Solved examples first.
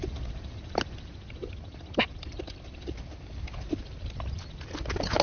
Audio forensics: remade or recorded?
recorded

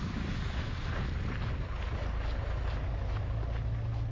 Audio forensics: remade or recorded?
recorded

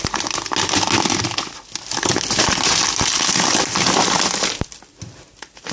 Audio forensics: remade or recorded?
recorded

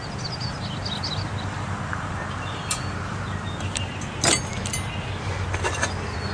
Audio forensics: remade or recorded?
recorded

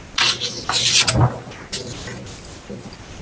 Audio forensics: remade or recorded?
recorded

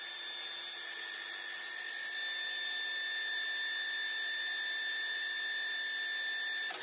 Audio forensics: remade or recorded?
recorded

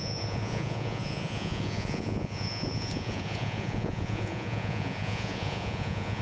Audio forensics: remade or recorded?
remade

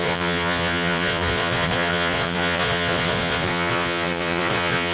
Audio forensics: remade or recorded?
remade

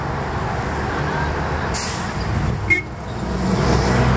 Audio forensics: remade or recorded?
recorded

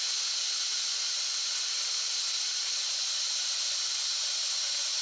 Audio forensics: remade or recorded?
recorded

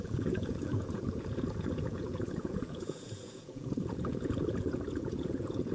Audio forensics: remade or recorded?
remade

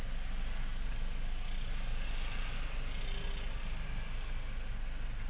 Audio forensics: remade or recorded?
recorded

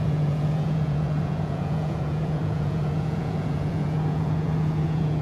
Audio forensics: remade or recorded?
remade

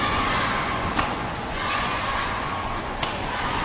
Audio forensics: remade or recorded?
remade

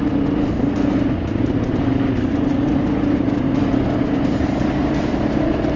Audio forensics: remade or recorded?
recorded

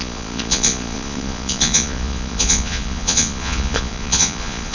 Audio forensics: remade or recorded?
remade